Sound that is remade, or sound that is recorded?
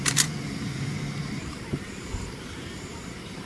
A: remade